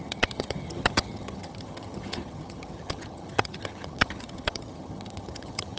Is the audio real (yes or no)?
no